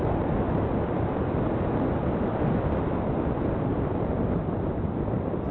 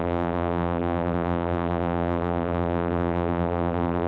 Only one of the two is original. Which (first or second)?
first